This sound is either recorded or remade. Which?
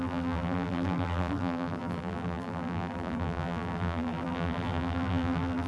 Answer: remade